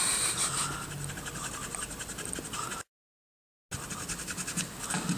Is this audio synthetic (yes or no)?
no